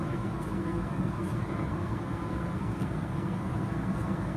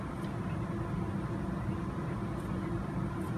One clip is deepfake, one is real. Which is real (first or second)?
second